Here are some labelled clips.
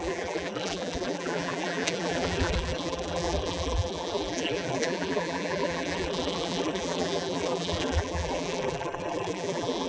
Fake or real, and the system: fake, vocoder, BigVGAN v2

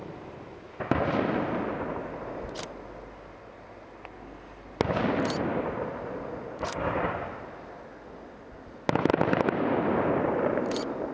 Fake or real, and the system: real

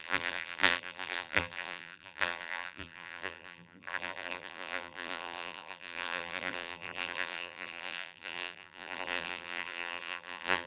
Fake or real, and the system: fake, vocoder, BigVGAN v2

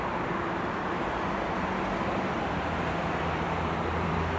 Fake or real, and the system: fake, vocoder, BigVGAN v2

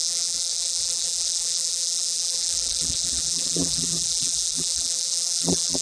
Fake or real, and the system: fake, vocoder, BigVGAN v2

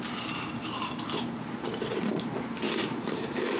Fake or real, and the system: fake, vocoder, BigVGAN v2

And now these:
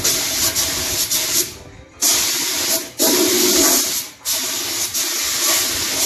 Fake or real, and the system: real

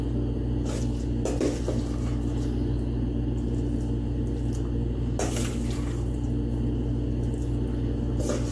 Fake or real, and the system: real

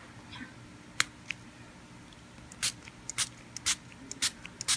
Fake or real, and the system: real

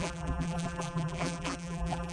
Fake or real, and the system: fake, vocoder, BigVGAN v2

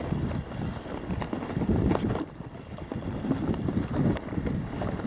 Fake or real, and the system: fake, vocoder, BigVGAN v2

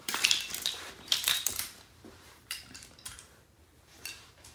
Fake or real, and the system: fake, vocoder, BigVGAN v2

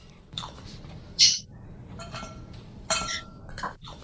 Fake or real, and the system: fake, vocoder, BigVGAN v2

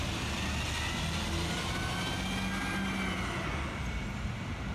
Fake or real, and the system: real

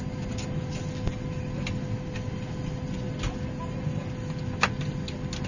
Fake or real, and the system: real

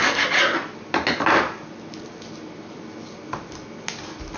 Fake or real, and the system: real